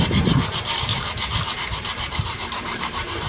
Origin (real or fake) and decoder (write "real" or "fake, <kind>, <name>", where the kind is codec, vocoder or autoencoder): fake, vocoder, BigVGAN v2